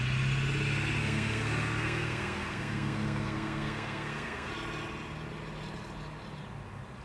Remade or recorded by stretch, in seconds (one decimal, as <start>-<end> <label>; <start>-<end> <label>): 0.0-1.0 recorded; 1.0-4.5 remade; 4.5-7.0 recorded

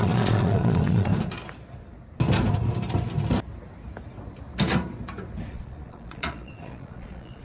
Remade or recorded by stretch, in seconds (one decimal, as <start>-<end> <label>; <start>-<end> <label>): 0.0-1.1 remade; 1.1-5.5 recorded; 5.5-7.4 remade